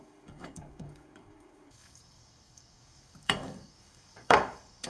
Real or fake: fake